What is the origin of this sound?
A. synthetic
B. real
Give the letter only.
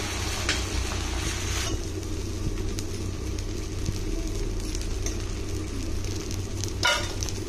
B